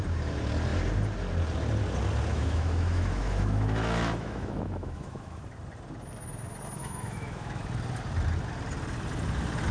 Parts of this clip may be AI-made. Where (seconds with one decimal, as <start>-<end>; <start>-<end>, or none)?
2.3-5.4; 6.8-7.6